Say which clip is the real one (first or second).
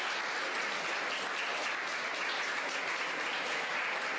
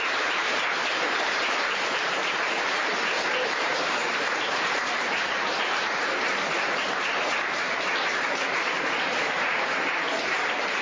first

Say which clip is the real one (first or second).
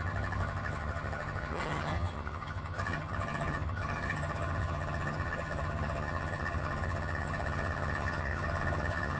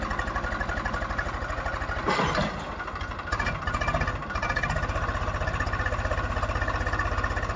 second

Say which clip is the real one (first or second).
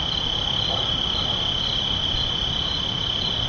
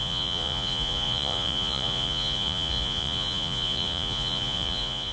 first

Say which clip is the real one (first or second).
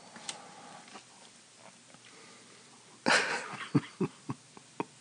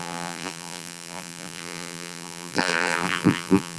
first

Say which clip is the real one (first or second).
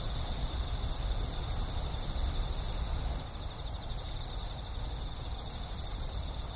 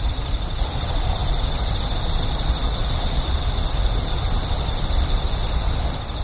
first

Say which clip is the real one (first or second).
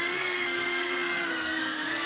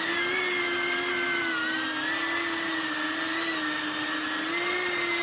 second